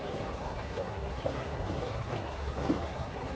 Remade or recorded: remade